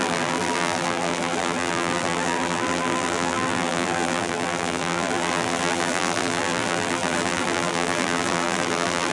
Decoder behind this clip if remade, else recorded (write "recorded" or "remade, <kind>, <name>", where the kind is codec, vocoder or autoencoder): remade, vocoder, BigVGAN v2